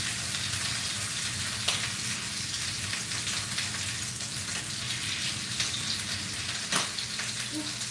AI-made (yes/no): no